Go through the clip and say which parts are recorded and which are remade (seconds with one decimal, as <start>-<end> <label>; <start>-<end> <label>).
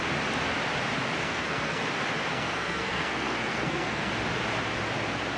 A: 0.0-1.2 recorded; 1.2-1.8 remade; 1.8-2.3 recorded; 2.3-4.1 remade; 4.1-5.4 recorded